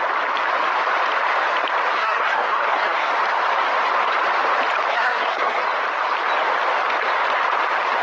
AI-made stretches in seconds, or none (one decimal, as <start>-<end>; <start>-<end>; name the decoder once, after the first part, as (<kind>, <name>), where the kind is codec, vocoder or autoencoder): 1.9-3.1 (codec, SNAC); 4.9-5.6

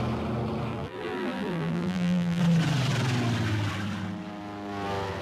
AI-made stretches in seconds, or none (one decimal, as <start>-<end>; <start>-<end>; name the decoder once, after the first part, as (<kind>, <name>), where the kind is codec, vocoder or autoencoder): 0.7-2.4 (vocoder, BigVGAN v2)

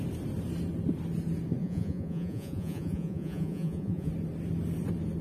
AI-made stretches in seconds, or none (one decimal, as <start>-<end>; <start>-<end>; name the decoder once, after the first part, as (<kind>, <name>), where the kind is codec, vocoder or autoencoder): 1.6-4.1 (vocoder, Vocos)